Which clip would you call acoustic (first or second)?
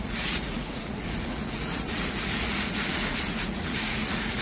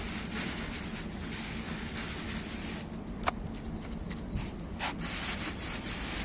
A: second